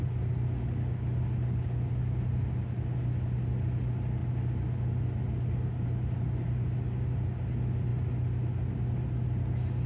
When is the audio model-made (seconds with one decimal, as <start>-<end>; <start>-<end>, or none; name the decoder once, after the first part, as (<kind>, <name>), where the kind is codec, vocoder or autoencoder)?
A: none